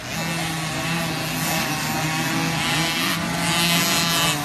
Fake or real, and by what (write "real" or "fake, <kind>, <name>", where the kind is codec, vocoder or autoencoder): real